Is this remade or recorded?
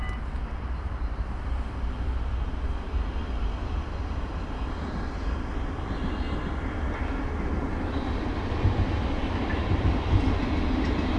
recorded